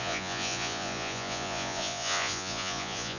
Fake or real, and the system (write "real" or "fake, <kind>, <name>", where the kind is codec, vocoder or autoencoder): fake, vocoder, Vocos